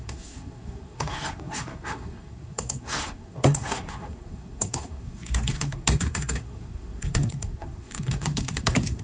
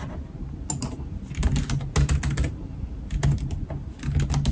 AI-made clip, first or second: first